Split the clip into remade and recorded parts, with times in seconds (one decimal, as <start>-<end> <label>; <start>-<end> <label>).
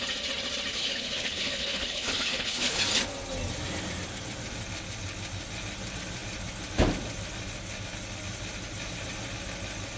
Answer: 0.0-0.7 recorded; 0.7-2.8 remade; 2.8-10.0 recorded